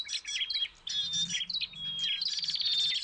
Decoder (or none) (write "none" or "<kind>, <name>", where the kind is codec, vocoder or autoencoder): none